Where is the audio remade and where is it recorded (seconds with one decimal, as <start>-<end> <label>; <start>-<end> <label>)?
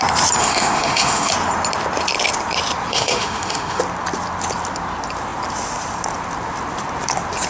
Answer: 0.0-0.4 recorded; 0.4-1.3 remade; 1.3-2.9 recorded; 2.9-3.8 remade; 3.8-7.5 recorded